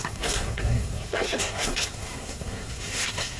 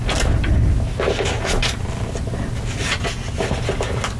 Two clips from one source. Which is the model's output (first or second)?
first